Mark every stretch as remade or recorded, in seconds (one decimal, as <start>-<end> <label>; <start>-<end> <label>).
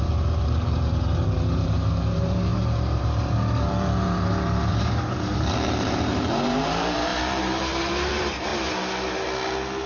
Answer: 0.0-8.5 remade; 8.5-9.9 recorded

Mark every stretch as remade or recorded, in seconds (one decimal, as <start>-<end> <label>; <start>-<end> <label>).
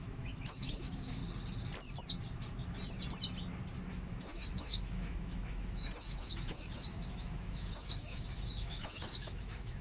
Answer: 0.0-1.2 remade; 1.2-3.9 recorded; 3.9-9.8 remade